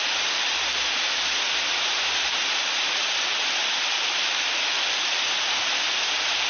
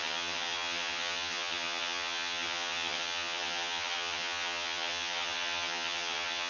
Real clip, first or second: first